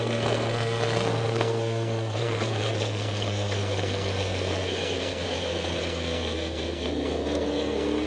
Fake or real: fake